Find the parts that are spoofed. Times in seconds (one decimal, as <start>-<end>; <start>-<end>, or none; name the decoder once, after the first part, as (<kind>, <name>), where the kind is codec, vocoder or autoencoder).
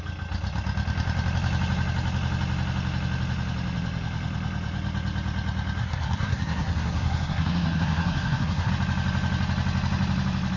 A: 5.8-8.7 (codec, SNAC)